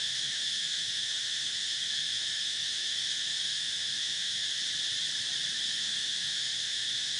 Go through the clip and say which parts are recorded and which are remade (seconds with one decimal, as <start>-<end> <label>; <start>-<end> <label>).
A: 0.0-4.6 remade; 4.6-5.7 recorded; 5.7-7.2 remade